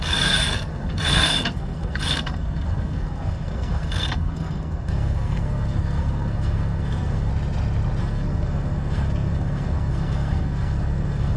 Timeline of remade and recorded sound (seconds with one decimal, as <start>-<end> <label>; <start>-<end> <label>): 0.0-7.3 remade; 7.3-8.0 recorded; 8.0-11.4 remade